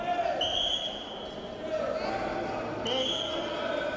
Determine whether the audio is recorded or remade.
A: recorded